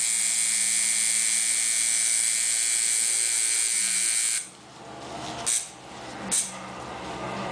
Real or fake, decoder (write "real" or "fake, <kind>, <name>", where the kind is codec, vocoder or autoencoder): real